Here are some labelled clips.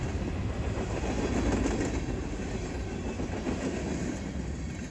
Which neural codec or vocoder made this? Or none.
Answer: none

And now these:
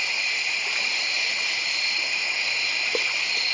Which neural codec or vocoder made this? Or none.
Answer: none